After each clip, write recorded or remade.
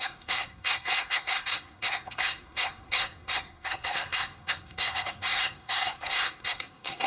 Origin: remade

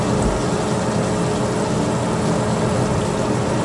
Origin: recorded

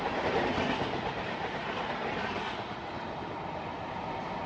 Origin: recorded